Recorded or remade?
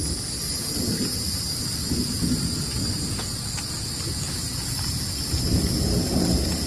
recorded